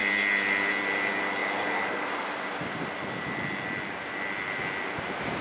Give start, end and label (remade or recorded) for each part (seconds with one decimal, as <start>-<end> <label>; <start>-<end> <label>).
0.0-5.4 recorded